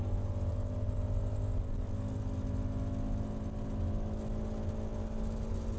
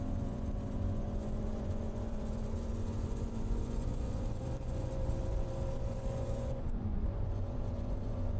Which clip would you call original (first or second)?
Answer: first